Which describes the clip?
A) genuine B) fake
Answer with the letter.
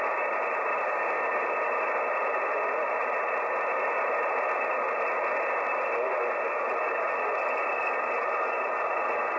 A